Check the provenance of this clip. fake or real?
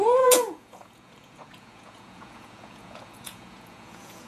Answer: fake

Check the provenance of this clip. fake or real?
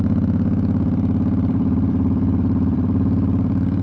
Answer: fake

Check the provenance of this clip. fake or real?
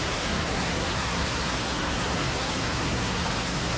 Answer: fake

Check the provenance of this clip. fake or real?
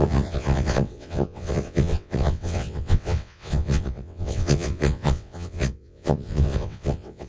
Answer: fake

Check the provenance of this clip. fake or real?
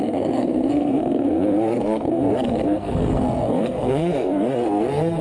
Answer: fake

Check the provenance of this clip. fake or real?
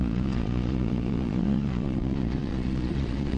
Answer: fake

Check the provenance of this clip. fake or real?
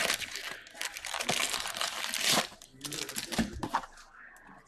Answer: real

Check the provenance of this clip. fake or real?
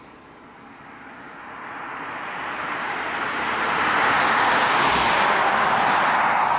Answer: real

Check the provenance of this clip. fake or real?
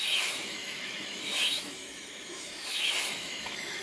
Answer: fake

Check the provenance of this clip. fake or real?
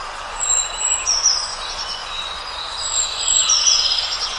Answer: fake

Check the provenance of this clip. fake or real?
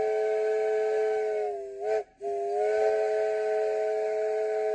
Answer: real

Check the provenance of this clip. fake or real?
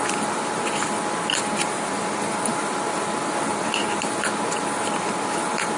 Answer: fake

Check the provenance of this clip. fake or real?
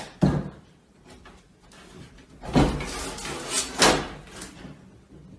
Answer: real